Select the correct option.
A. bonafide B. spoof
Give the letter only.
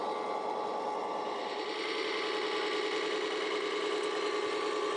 A